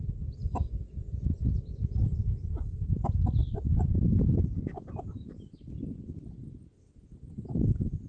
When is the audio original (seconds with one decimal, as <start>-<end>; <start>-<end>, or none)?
0.0-8.1